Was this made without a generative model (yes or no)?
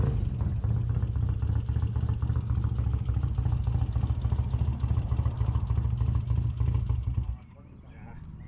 yes